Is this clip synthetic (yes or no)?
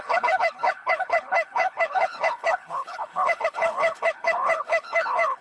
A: yes